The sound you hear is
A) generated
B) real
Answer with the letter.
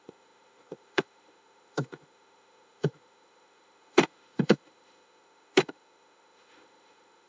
A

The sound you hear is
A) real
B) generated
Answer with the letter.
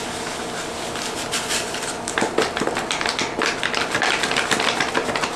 A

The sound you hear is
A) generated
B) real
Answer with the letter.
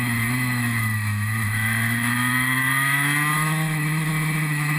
A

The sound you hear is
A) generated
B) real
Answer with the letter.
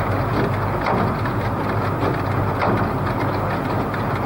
B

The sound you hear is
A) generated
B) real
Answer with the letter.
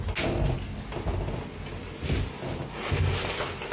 B